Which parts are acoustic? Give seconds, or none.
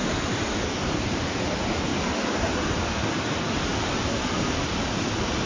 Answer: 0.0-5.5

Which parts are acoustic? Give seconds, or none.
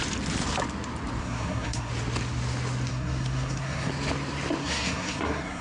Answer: 0.0-1.2; 1.9-2.9; 3.9-4.6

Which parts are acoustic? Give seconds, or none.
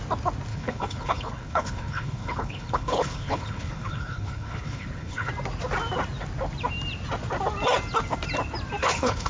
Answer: 0.0-0.5; 5.3-8.8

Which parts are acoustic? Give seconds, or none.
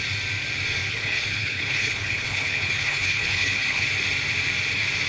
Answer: 0.0-0.9; 3.8-5.1